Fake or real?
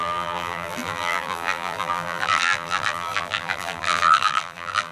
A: fake